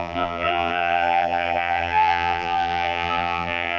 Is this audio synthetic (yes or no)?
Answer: yes